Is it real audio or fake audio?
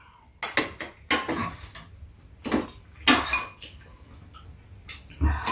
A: real